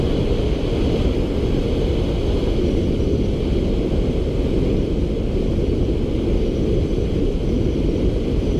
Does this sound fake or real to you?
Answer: real